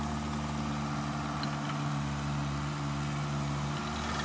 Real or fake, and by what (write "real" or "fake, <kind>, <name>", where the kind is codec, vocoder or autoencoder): real